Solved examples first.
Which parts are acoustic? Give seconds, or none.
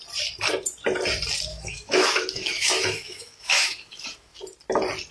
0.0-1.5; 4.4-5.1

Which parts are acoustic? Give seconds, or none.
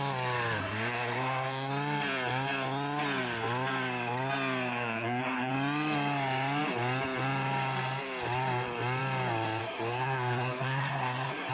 0.0-0.6; 1.7-4.7; 5.5-9.6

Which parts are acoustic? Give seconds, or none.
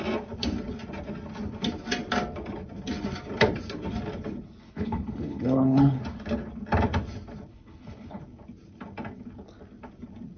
0.0-4.6; 6.0-7.5; 8.2-10.4